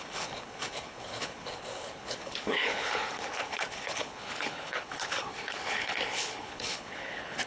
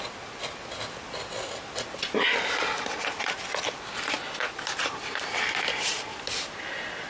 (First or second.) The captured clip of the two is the second